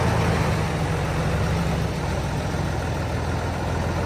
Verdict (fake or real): real